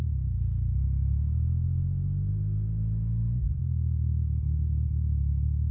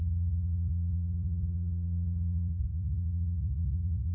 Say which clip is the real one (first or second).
first